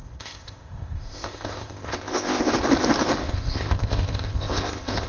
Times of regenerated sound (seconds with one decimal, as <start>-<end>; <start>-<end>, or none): 0.0-2.5; 3.2-5.1